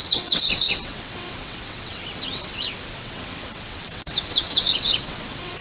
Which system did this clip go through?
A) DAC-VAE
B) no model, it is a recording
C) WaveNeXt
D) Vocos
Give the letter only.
C